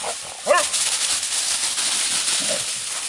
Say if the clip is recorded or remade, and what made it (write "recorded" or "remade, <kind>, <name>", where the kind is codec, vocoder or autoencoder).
recorded